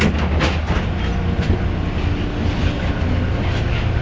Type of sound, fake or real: real